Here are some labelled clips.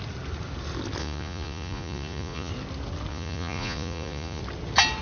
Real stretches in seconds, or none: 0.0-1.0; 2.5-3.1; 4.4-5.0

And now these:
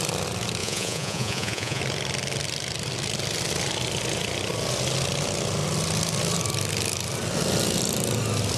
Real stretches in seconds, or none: 0.0-0.6; 1.8-8.6

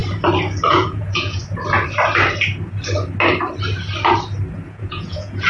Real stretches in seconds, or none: 0.0-0.7; 1.4-4.7

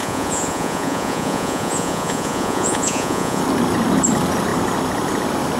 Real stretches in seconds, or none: 3.4-5.6

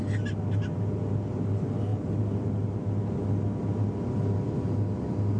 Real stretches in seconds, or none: 0.0-5.4

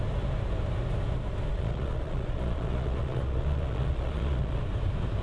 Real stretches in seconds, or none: 0.0-1.5; 4.6-5.2